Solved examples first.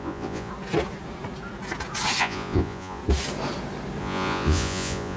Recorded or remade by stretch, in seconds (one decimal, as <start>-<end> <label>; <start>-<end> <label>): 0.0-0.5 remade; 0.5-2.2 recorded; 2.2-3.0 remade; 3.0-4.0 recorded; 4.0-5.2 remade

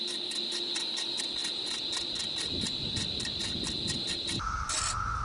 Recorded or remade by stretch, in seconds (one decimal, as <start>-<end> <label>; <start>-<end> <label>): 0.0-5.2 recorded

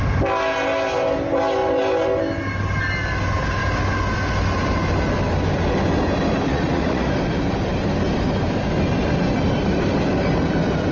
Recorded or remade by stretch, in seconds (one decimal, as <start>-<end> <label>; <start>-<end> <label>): 0.0-6.5 recorded; 6.5-7.1 remade; 7.1-10.9 recorded

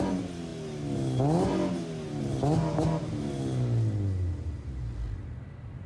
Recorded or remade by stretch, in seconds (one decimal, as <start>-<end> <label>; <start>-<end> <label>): 0.0-5.9 recorded